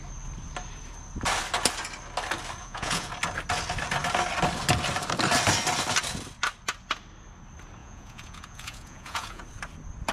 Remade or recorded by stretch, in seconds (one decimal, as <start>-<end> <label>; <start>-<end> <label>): 0.0-2.6 recorded; 2.6-3.1 remade; 3.1-7.8 recorded; 7.8-9.4 remade; 9.4-10.1 recorded